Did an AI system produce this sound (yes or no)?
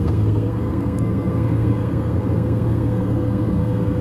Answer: yes